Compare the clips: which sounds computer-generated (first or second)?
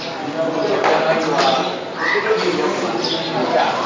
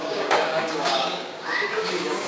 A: second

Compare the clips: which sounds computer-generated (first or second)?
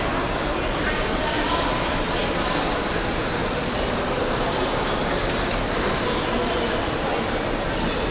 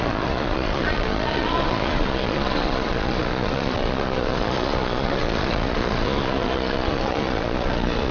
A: second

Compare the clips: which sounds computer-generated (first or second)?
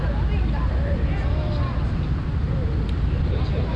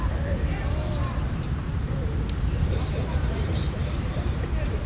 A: second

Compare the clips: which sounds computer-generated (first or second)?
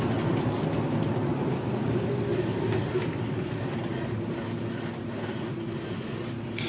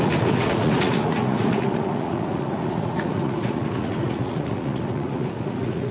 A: second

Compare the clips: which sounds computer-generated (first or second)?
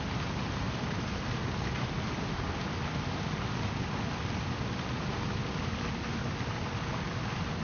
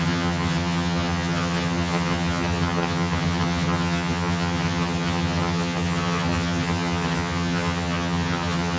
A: second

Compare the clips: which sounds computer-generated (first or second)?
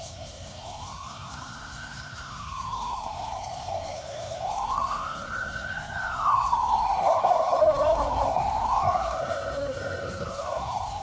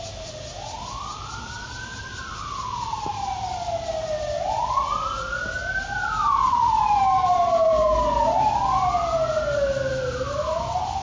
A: first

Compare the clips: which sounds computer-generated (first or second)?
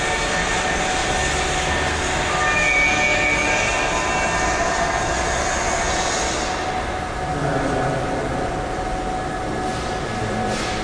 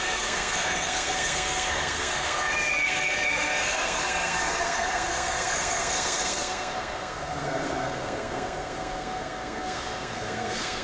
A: second